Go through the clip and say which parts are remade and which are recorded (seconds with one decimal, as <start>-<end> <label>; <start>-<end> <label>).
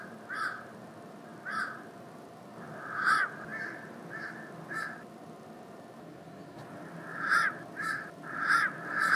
0.0-1.3 recorded; 1.3-2.7 remade; 2.7-3.5 recorded; 3.5-4.7 remade; 4.7-7.1 recorded; 7.1-9.2 remade